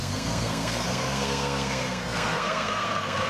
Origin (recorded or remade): remade